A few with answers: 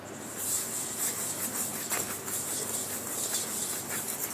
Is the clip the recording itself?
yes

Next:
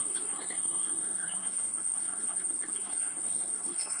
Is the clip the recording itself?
no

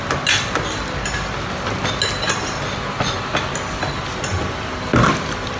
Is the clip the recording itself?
yes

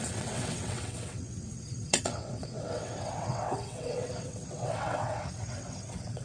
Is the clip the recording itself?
no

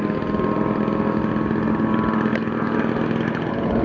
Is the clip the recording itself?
yes